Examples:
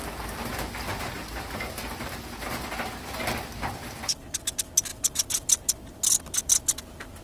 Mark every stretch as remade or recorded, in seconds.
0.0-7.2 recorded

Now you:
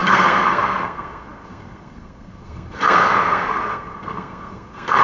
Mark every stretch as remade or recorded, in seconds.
0.0-5.0 remade

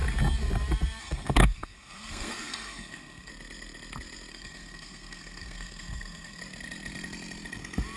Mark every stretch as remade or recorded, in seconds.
0.0-1.0 recorded; 1.0-3.3 remade; 3.3-4.3 recorded; 4.3-6.4 remade; 6.4-8.0 recorded

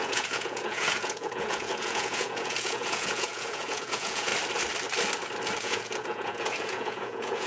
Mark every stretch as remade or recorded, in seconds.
0.0-4.3 remade; 4.3-5.6 recorded; 5.6-7.5 remade

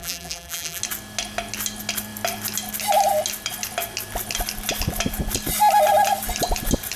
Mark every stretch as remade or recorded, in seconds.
0.0-0.8 remade; 0.8-7.0 recorded